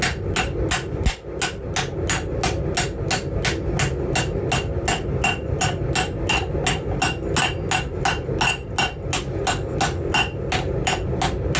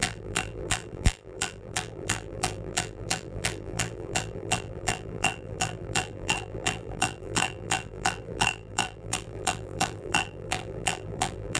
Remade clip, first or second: second